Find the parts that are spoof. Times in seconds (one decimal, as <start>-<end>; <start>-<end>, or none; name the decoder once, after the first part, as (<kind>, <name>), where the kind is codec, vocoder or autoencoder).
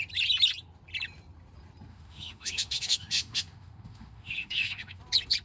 1.9-5.0 (autoencoder, DAC-VAE)